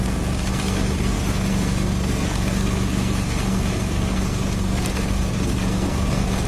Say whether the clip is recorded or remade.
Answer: remade